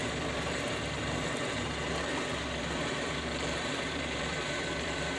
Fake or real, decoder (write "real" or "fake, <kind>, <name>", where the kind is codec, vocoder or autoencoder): fake, vocoder, BigVGAN v2